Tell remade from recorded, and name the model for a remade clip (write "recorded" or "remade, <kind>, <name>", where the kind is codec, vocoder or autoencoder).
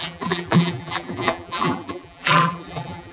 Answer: remade, vocoder, BigVGAN v2